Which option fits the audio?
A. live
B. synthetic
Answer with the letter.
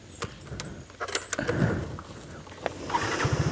A